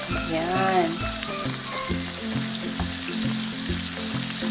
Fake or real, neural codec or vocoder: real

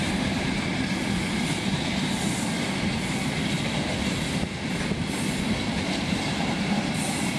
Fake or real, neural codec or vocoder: real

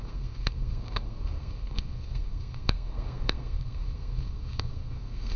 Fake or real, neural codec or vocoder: fake, codec, SNAC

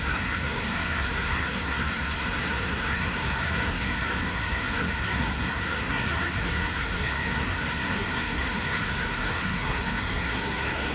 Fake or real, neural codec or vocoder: fake, codec, SNAC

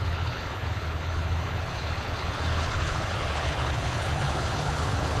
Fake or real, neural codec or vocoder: fake, codec, HILCodec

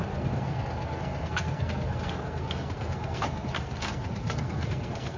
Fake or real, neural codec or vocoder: fake, codec, SNAC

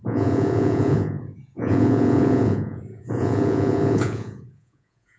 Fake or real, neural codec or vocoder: fake, vocoder, Vocos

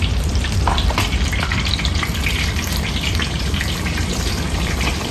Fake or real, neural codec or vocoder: fake, vocoder, BigVGAN v2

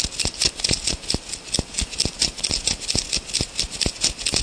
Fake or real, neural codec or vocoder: real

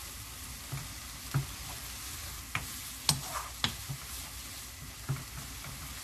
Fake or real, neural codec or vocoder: real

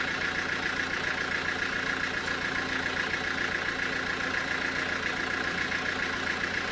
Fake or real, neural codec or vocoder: real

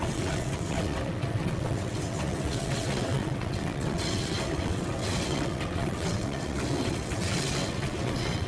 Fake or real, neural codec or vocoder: fake, vocoder, WaveNeXt